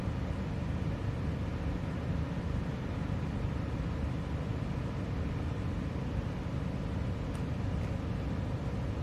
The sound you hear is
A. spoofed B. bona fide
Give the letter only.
B